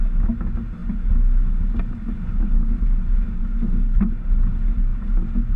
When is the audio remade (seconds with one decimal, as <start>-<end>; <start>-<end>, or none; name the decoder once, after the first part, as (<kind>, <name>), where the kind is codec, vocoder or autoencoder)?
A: none